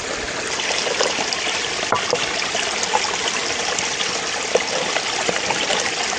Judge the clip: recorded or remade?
recorded